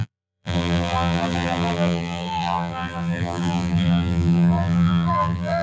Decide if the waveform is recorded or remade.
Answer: remade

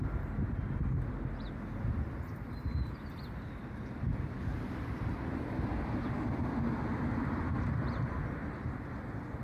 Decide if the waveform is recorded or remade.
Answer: recorded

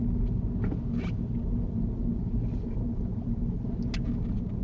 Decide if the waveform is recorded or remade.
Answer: recorded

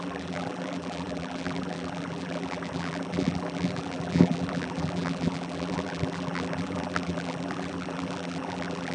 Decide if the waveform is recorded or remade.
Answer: remade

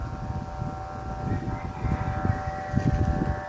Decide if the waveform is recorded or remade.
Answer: recorded